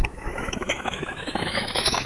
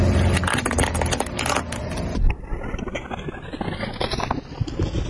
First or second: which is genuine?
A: second